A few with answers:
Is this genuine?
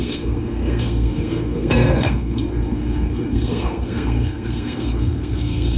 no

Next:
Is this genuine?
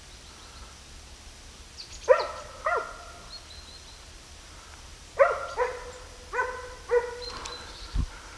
yes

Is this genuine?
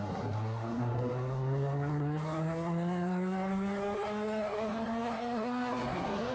no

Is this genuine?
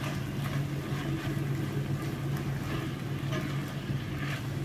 yes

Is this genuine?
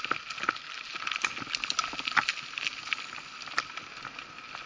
yes